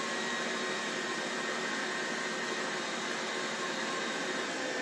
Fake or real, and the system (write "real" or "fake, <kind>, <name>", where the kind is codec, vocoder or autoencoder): real